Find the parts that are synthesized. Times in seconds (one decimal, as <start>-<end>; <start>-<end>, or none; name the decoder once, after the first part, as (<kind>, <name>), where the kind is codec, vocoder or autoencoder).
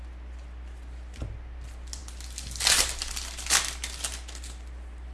none